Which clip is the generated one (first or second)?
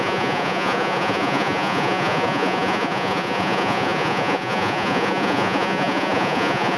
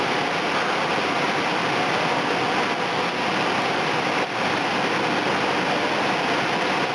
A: first